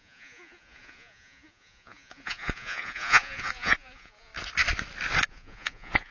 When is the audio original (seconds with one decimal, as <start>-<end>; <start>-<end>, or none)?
4.3-5.3